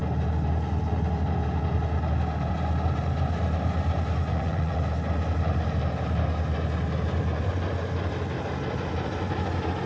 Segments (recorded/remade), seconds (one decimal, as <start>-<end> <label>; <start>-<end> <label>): 0.0-4.3 recorded; 4.3-4.8 remade; 4.8-9.9 recorded